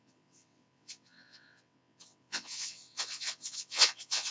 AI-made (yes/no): yes